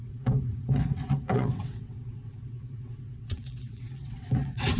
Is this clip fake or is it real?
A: fake